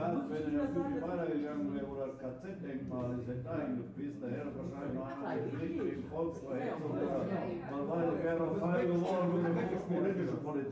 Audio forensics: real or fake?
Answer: real